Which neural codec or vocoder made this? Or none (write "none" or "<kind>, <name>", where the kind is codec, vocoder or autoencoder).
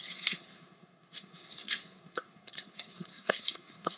codec, SNAC